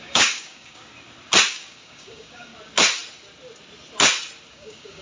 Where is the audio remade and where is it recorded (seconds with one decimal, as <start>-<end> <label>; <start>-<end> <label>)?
0.0-0.9 remade; 0.9-1.5 recorded; 1.5-2.5 remade; 2.5-4.5 recorded; 4.5-5.0 remade